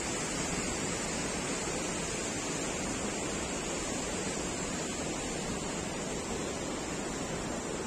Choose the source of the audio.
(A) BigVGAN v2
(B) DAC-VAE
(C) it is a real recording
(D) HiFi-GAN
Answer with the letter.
C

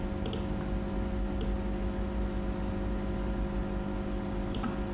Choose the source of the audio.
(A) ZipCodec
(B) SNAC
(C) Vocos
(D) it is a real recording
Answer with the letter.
D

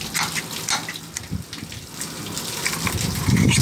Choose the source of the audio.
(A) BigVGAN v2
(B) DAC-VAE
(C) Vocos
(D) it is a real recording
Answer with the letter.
D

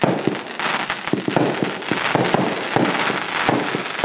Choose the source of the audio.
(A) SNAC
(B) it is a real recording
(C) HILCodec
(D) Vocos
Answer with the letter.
B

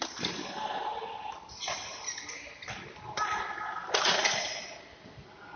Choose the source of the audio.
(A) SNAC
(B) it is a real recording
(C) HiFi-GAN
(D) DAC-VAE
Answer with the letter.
B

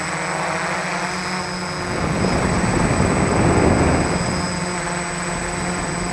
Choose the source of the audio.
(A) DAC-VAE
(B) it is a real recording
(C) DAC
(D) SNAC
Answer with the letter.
B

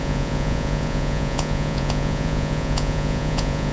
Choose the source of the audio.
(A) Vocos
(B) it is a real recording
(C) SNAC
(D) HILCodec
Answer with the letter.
A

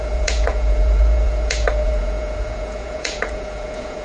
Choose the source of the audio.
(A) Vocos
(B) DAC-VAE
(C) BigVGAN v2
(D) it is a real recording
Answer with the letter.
A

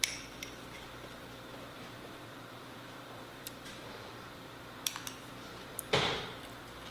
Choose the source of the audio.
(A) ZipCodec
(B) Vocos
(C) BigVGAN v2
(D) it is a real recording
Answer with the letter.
C